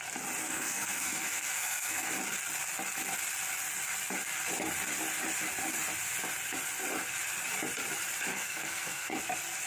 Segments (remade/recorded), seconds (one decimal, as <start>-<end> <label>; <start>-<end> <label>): 0.0-0.4 recorded; 0.4-2.1 remade; 2.1-8.3 recorded; 8.3-9.2 remade; 9.2-9.7 recorded

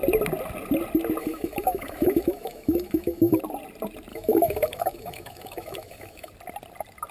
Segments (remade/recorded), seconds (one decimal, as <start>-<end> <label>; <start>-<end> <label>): 0.0-1.2 recorded; 1.2-3.4 remade; 3.4-4.1 recorded; 4.1-6.3 remade; 6.3-7.1 recorded

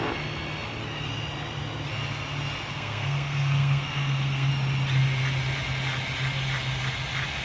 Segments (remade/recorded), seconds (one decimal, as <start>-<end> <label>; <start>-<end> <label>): 0.0-2.7 recorded; 2.7-4.5 remade; 4.5-7.4 recorded

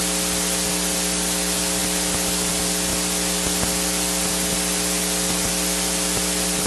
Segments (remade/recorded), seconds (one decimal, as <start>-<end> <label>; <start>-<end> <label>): 0.0-6.7 recorded

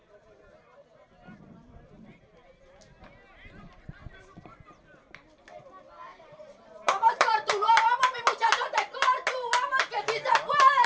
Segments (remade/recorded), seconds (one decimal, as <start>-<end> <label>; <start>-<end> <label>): 0.0-6.1 recorded; 6.1-8.2 remade; 8.2-10.9 recorded

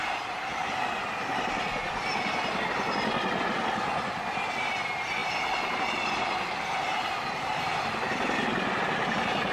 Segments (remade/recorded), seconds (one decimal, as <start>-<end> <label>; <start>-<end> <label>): 0.0-5.2 recorded; 5.2-7.5 remade; 7.5-9.5 recorded

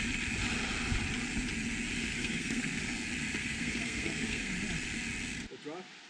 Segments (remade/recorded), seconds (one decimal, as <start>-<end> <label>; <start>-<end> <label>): 0.0-2.1 recorded; 2.1-2.8 remade; 2.8-3.4 recorded; 3.4-4.5 remade; 4.5-6.1 recorded

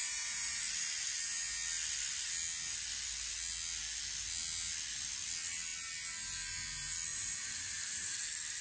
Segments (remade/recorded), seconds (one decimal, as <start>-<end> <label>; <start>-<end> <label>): 0.0-0.6 remade; 0.6-7.1 recorded; 7.1-8.2 remade; 8.2-8.6 recorded